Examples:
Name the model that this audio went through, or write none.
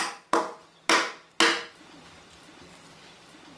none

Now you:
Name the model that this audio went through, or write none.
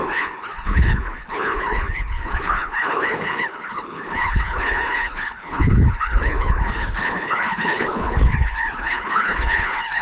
codec, HILCodec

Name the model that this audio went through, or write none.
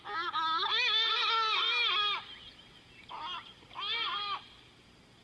none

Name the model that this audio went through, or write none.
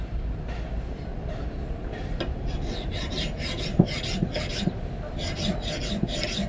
none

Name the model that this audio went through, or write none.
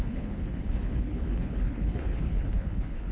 codec, HILCodec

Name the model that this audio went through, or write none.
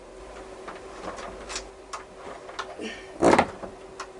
none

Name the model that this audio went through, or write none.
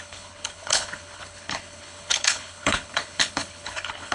codec, HILCodec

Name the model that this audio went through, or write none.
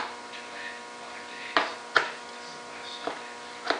none